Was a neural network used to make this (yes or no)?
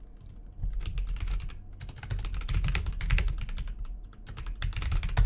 no